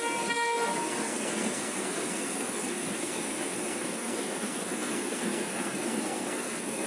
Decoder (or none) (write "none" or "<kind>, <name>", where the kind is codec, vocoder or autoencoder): codec, SNAC